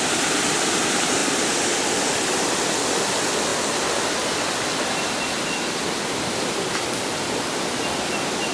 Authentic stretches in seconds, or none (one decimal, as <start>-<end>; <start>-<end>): 0.0-8.5

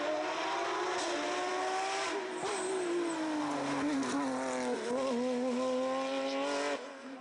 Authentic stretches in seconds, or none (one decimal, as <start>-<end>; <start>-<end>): 0.0-7.2

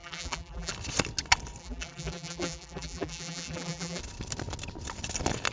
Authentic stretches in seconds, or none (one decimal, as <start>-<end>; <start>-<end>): 0.7-1.6; 4.0-5.5

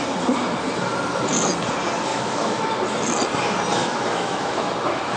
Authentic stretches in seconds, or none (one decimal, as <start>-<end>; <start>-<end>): 0.0-2.1; 2.6-3.8; 4.7-5.2

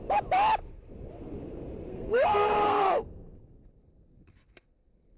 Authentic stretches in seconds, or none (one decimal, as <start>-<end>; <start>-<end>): 0.0-1.9; 3.7-5.2